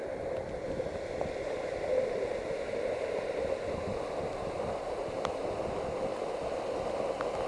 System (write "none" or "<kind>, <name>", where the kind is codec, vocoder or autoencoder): none